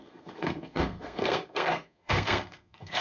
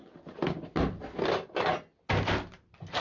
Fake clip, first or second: first